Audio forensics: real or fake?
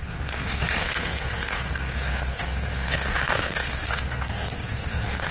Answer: fake